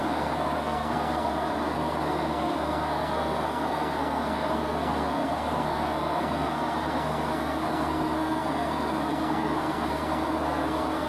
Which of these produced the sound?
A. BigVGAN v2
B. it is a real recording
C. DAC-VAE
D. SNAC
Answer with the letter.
D